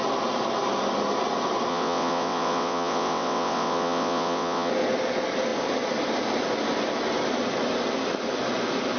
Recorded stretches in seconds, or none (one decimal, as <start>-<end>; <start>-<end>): 0.0-1.7; 4.7-9.0